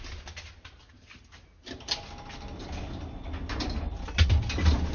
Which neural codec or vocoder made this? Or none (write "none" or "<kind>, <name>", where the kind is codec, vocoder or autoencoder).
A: none